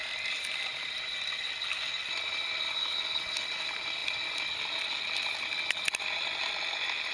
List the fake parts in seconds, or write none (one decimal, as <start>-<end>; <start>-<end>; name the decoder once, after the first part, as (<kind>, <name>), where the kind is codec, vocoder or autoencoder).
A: 0.0-1.2 (vocoder, BigVGAN v2)